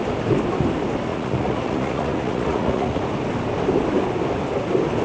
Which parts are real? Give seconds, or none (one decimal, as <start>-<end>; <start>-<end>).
0.0-1.1; 3.0-5.0